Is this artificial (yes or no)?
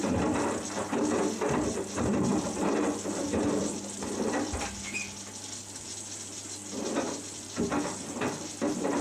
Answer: no